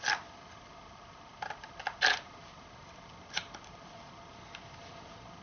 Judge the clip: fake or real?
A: real